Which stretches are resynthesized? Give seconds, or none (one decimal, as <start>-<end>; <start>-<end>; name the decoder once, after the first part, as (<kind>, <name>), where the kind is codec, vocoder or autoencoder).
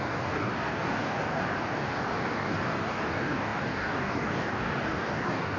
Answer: 0.0-5.6 (codec, DAC)